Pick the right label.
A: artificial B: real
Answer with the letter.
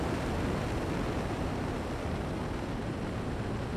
B